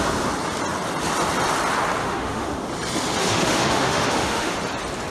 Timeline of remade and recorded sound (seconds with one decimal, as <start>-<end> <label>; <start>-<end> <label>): 0.0-2.0 recorded; 2.0-2.6 remade; 2.6-3.2 recorded; 3.2-4.6 remade; 4.6-5.1 recorded